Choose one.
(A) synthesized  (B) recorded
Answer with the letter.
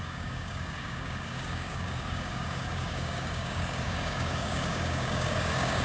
A